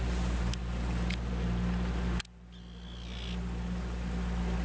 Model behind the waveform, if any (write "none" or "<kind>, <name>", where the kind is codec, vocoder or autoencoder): none